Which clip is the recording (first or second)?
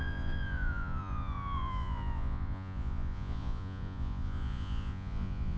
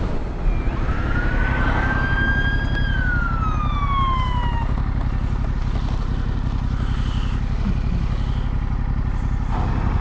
second